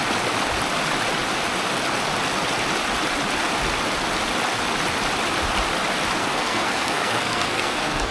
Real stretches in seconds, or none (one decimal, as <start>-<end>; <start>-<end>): 0.0-6.2